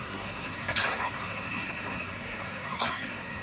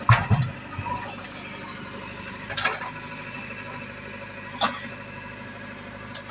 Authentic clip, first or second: second